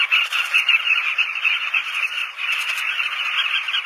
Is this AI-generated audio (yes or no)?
no